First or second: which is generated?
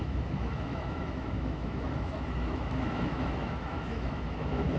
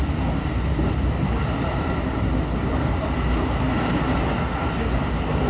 first